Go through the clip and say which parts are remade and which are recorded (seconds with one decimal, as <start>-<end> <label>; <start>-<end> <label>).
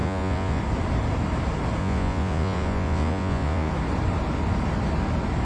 0.0-0.6 remade; 0.6-1.8 recorded; 1.8-3.7 remade; 3.7-5.5 recorded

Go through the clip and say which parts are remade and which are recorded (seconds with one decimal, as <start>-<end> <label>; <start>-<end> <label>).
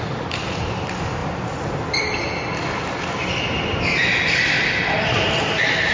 0.0-5.9 recorded